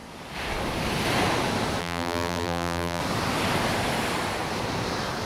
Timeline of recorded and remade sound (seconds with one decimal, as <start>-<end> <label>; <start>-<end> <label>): 0.0-1.8 recorded; 1.8-3.0 remade; 3.0-5.3 recorded